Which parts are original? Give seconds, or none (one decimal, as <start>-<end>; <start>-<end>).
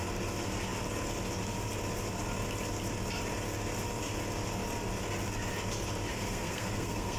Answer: 0.0-6.1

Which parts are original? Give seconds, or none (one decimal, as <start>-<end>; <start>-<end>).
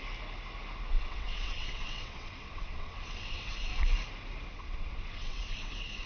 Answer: 0.0-0.9; 3.7-4.5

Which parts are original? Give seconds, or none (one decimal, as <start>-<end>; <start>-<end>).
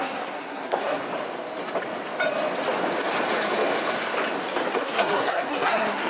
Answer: 1.0-4.7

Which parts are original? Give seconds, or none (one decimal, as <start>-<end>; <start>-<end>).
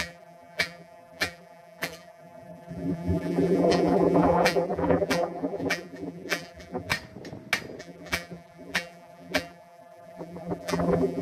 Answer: 6.9-7.8